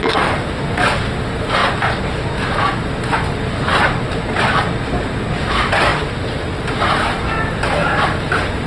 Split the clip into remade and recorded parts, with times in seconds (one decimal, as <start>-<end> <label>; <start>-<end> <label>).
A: 0.0-8.7 recorded